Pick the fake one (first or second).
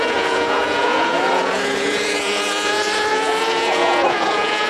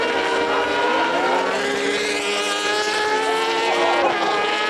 first